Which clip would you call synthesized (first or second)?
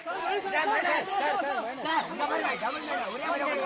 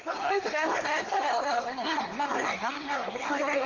second